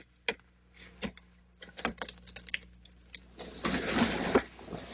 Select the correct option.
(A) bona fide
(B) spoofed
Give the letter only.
A